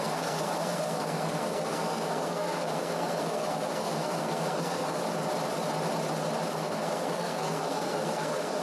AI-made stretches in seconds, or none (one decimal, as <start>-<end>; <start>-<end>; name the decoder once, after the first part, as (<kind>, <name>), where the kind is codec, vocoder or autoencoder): 0.0-5.0 (codec, SNAC); 6.5-8.6